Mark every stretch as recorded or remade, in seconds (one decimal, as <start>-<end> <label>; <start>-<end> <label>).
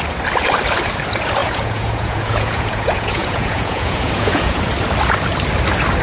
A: 0.0-1.4 recorded; 1.4-4.6 remade; 4.6-6.0 recorded